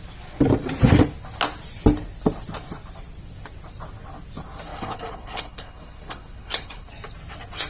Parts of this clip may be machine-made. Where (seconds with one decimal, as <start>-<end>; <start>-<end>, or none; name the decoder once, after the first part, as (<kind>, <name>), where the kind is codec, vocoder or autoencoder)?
4.7-6.9 (codec, HILCodec)